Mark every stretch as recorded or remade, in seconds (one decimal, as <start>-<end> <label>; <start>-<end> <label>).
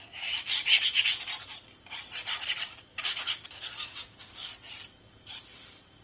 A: 0.0-2.9 recorded; 2.9-4.5 remade; 4.5-6.0 recorded